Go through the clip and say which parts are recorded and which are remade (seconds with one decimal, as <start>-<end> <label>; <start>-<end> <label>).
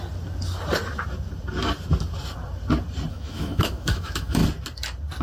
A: 0.0-3.1 recorded; 3.1-4.4 remade; 4.4-5.2 recorded